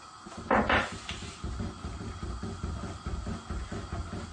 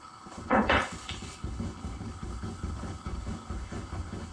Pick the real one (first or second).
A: first